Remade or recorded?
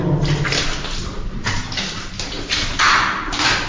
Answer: recorded